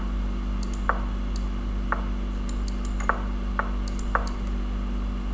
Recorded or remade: recorded